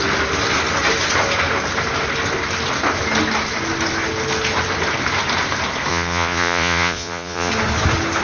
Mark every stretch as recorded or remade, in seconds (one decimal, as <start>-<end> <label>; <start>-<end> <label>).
0.0-5.9 recorded; 5.9-7.5 remade; 7.5-8.2 recorded